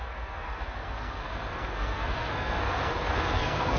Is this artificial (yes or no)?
yes